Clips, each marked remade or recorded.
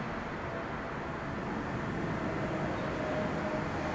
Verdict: recorded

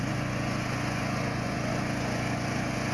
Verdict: remade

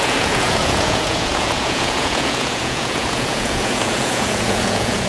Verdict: remade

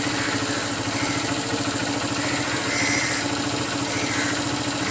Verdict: recorded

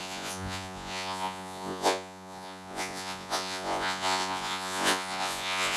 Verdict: remade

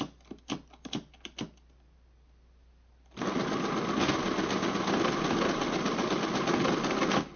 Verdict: recorded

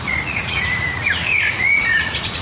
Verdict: remade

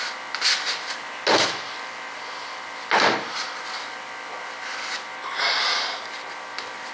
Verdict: recorded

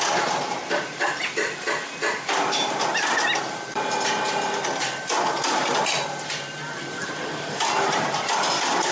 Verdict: recorded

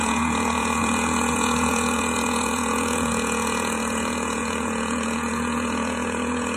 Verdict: remade